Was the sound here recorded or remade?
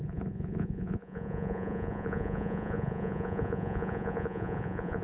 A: remade